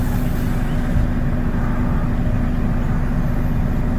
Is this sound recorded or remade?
recorded